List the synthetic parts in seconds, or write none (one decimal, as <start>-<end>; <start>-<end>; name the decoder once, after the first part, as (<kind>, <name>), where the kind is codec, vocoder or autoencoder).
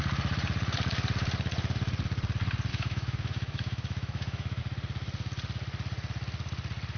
2.7-4.6 (autoencoder, DAC-VAE)